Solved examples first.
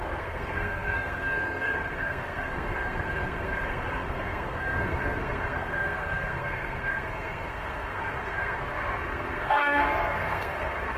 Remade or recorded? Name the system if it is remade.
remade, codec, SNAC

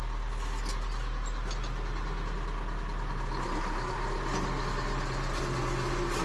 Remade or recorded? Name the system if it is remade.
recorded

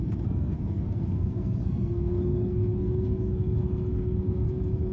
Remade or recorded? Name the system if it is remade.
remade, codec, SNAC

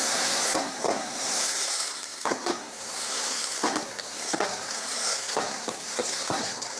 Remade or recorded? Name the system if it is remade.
remade, codec, SNAC